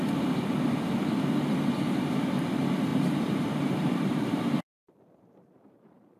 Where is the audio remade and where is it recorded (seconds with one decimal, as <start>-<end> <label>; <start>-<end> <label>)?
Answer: 0.0-2.9 recorded; 2.9-6.2 remade